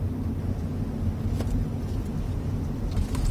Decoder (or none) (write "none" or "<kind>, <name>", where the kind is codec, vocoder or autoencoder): none